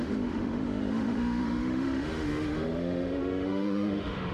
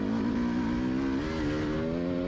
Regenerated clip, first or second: first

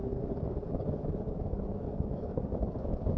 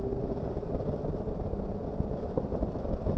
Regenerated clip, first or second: first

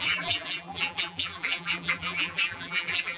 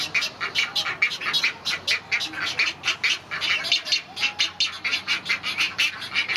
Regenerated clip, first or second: first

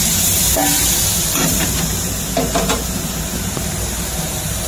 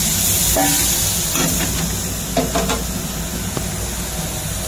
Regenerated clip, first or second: first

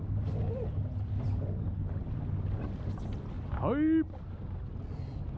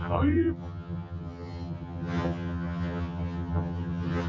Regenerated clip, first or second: second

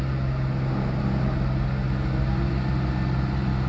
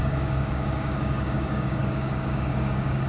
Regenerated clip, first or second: second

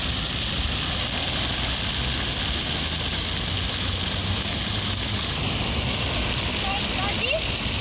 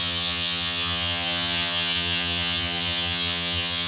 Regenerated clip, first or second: second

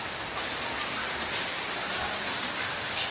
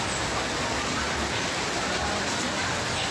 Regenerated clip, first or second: first